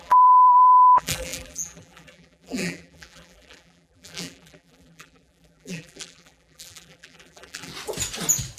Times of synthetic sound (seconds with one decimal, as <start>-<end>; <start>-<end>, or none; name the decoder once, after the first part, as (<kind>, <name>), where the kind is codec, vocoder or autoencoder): 0.0-7.7 (vocoder, BigVGAN v2)